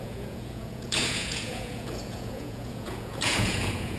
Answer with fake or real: fake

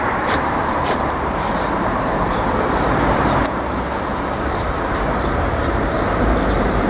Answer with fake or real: fake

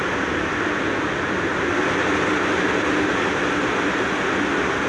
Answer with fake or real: real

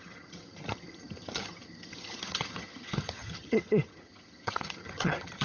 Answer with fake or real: fake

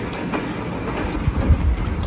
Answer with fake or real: real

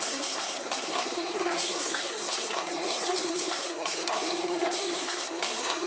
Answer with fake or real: fake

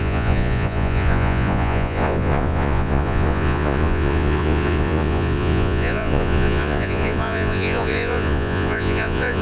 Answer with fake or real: fake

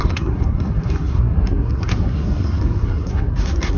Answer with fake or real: fake